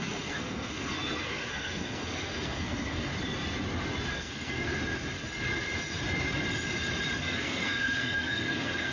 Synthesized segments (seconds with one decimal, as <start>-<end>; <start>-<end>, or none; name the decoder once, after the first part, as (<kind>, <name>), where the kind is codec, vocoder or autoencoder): 0.0-3.1 (codec, SNAC); 4.1-4.7; 7.2-8.9